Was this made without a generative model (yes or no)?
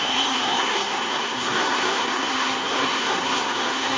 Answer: no